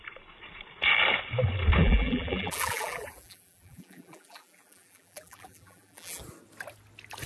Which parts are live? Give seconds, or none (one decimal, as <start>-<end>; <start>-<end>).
0.0-1.8; 6.2-7.3